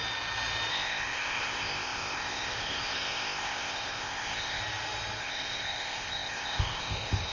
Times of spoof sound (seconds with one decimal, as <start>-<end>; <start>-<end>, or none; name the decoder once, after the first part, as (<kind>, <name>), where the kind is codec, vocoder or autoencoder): 0.7-4.6 (codec, ZipCodec); 5.2-7.3